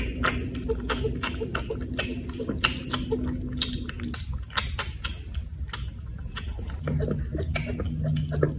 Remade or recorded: recorded